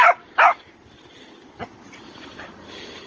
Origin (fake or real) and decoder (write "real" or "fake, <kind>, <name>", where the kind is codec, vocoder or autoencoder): real